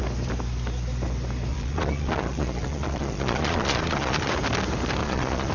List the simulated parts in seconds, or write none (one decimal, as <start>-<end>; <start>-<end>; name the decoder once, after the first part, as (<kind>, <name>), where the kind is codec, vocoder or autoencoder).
1.5-4.3 (vocoder, Vocos); 5.0-5.5